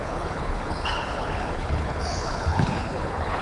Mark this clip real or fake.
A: fake